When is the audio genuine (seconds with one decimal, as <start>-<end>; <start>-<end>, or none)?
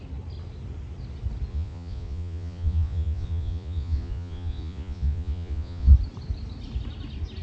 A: 0.0-1.5; 5.9-7.4